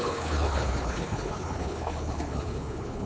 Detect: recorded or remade remade